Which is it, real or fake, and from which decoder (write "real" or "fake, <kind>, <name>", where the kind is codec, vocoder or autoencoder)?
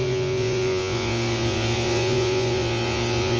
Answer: fake, vocoder, Vocos